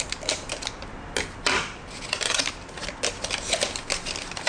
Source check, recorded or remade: recorded